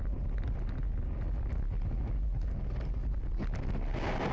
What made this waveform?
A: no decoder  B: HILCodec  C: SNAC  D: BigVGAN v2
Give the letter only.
A